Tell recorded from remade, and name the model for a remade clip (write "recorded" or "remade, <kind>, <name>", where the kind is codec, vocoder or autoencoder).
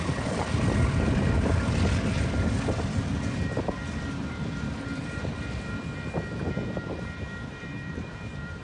remade, vocoder, BigVGAN v2